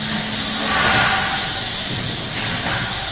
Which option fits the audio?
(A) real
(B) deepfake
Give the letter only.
A